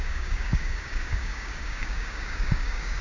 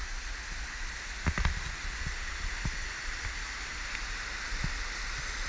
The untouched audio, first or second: second